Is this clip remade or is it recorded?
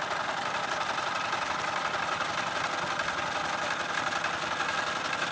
recorded